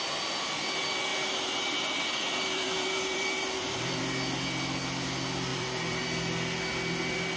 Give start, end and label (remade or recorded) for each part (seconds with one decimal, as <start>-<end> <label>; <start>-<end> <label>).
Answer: 0.0-1.1 recorded; 1.1-4.0 remade; 4.0-5.5 recorded; 5.5-6.0 remade; 6.0-7.4 recorded